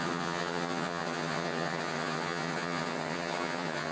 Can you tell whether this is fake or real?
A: fake